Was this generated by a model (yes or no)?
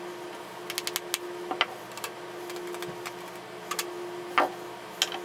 no